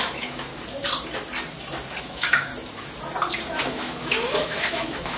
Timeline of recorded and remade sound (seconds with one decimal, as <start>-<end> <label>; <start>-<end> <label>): 0.0-0.5 remade; 0.5-2.0 recorded; 2.0-2.5 remade; 2.5-3.6 recorded; 3.6-5.2 remade